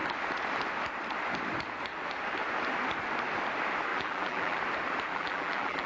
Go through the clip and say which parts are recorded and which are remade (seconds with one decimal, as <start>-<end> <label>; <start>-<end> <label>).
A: 0.0-3.9 recorded; 3.9-4.6 remade; 4.6-5.1 recorded; 5.1-5.9 remade